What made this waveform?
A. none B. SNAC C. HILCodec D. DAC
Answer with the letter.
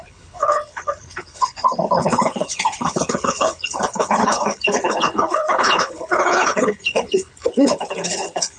C